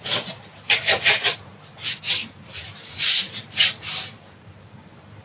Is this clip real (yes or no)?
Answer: no